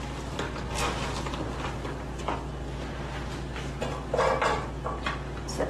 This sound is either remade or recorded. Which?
recorded